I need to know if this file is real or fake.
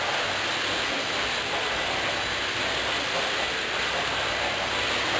real